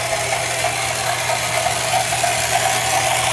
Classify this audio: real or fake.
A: real